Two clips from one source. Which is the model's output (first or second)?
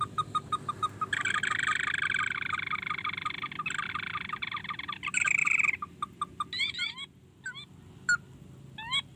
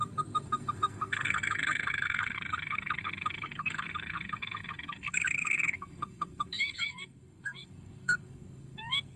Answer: second